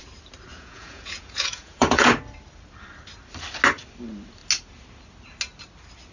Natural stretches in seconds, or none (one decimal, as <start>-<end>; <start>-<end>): 0.0-0.5; 2.1-6.1